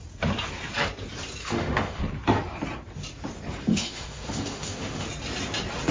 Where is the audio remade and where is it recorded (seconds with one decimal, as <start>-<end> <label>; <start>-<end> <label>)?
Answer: 0.0-1.4 recorded; 1.4-2.0 remade; 2.0-3.7 recorded; 3.7-5.1 remade; 5.1-5.9 recorded